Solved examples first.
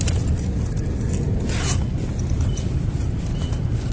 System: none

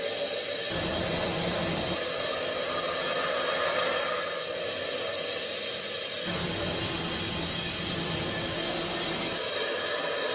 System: none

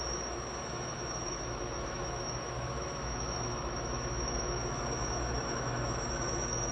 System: autoencoder, DAC-VAE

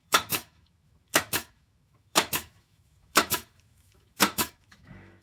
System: autoencoder, DAC-VAE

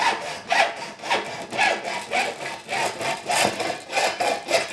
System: none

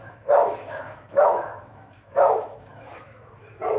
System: autoencoder, DAC-VAE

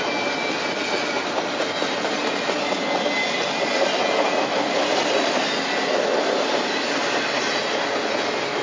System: none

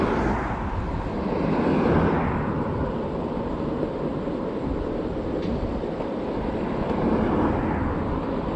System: none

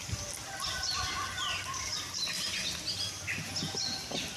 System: none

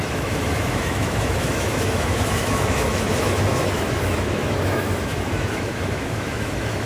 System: autoencoder, DAC-VAE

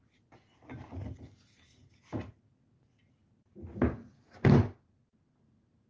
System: none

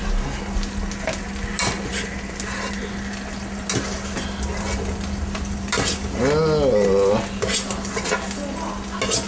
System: none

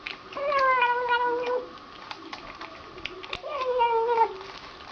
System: none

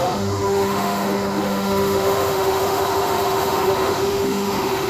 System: autoencoder, DAC-VAE